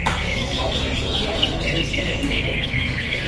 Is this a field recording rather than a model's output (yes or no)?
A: no